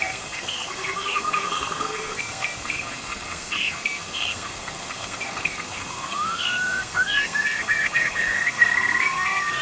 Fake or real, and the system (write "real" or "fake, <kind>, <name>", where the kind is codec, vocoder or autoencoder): fake, codec, SNAC